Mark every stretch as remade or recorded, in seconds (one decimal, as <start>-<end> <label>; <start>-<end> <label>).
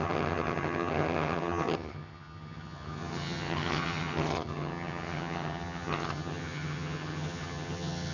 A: 0.0-8.1 remade